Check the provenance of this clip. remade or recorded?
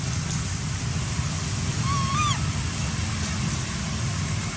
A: recorded